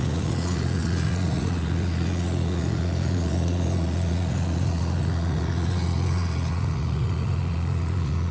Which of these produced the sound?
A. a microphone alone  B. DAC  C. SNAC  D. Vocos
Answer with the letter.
D